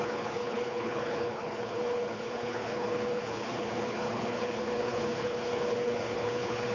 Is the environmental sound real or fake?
fake